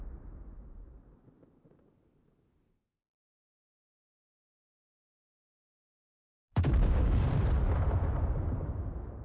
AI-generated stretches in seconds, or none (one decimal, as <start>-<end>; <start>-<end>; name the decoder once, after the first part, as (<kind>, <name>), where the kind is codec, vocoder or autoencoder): 3.2-7.3 (codec, DAC)